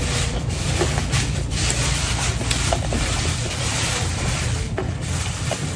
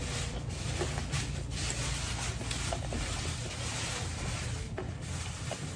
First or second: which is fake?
first